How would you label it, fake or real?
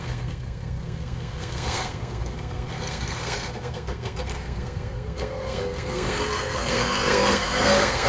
fake